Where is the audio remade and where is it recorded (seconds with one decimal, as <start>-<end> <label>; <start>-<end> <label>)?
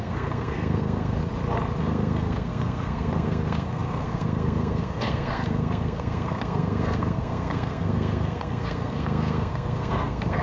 0.0-1.2 remade; 1.2-1.8 recorded; 1.8-10.4 remade